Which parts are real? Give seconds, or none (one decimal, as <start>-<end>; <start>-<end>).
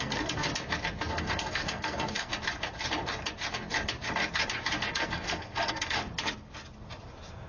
0.5-1.1; 2.3-4.9; 6.0-7.5